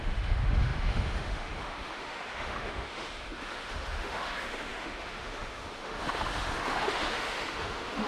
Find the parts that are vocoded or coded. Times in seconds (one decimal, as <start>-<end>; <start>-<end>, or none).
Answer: 0.0-8.1